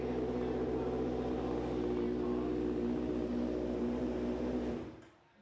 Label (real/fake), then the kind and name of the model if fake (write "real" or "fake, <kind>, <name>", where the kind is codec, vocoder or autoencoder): real